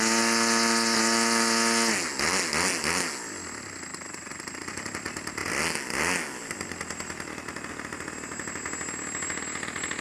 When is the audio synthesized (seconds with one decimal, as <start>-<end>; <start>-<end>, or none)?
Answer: none